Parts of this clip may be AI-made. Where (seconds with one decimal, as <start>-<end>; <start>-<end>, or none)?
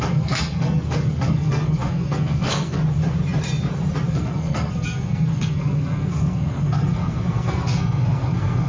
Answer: 0.0-2.8; 4.1-8.7